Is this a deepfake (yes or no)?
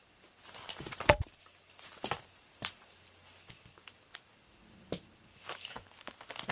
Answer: yes